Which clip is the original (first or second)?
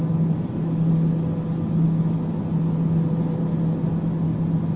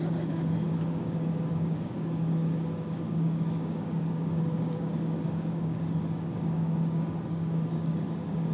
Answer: first